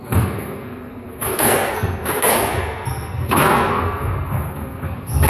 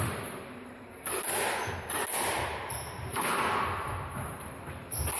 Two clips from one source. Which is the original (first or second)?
second